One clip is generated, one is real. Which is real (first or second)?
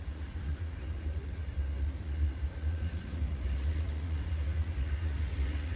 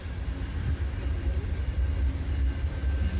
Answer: second